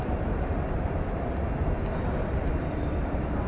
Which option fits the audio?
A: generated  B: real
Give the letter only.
B